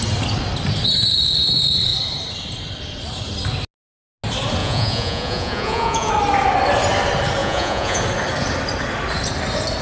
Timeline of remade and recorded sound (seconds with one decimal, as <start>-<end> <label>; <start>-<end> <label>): 0.0-4.6 recorded; 4.6-6.1 remade; 6.1-7.4 recorded; 7.4-8.0 remade; 8.0-9.8 recorded

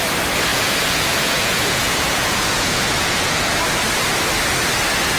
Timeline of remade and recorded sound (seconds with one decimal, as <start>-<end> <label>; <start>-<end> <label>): 0.0-0.5 recorded; 0.5-3.6 remade; 3.6-5.2 recorded

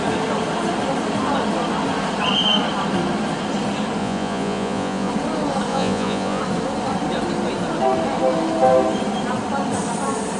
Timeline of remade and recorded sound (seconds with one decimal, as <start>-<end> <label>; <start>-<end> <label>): 0.0-4.0 recorded; 4.0-5.1 remade; 5.1-5.7 recorded; 5.7-6.4 remade; 6.4-10.4 recorded